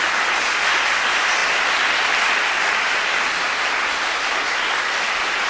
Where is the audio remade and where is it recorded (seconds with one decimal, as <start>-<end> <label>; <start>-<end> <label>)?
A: 0.0-5.5 recorded